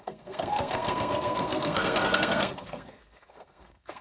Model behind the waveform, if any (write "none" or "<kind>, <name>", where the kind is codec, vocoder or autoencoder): codec, SNAC